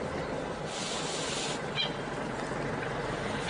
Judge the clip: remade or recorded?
recorded